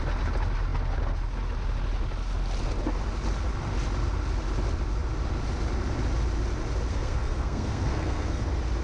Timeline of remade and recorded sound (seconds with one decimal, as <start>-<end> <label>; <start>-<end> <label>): 0.0-6.9 recorded; 6.9-8.4 remade; 8.4-8.8 recorded